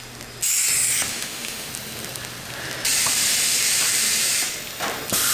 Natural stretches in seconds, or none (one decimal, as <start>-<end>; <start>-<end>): 0.0-1.1; 1.7-5.3